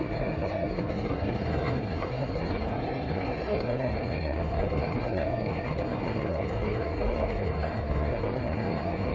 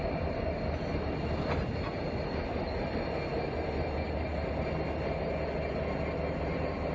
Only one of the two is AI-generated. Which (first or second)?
first